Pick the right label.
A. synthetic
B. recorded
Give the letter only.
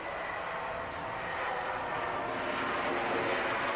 B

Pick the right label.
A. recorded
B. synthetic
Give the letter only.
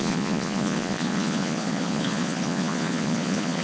B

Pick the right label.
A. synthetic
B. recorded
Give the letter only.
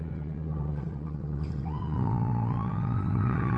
A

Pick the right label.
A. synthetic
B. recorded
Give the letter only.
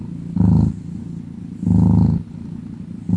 B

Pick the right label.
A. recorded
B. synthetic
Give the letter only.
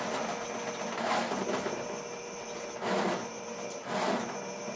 A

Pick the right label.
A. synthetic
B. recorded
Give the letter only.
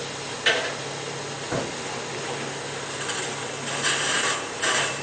B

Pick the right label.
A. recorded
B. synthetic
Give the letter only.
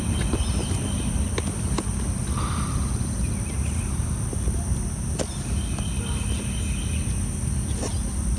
A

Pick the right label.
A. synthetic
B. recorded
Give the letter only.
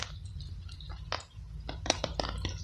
B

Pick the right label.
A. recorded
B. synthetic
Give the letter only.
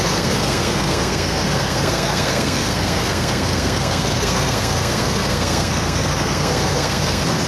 B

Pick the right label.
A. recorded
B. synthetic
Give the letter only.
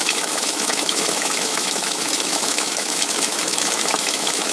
B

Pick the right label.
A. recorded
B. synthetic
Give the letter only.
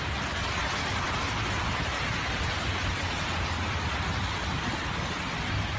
A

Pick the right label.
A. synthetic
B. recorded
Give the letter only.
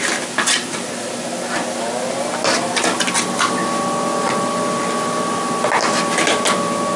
B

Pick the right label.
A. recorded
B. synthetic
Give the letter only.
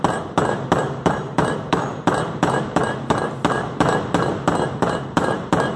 B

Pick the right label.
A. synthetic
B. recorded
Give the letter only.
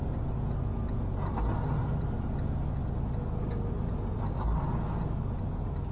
B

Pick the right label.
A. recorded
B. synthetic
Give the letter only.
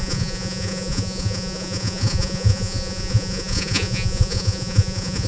B